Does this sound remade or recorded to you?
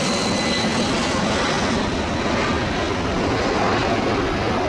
recorded